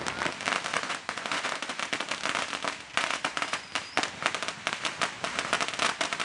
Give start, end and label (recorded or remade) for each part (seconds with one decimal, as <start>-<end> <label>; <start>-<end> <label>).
0.0-0.7 recorded; 0.7-1.8 remade; 1.8-2.9 recorded; 2.9-3.7 remade; 3.7-6.2 recorded